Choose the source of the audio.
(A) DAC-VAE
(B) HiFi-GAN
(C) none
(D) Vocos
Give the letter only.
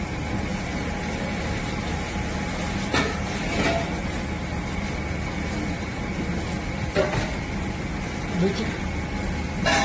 C